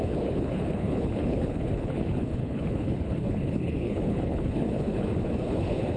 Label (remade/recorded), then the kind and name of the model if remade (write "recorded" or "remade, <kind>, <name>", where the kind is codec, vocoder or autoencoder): remade, codec, HILCodec